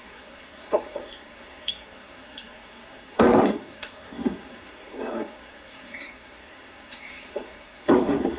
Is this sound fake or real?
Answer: fake